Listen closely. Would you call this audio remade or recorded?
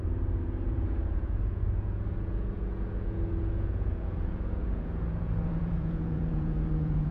remade